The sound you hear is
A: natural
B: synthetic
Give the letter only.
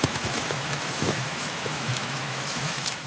B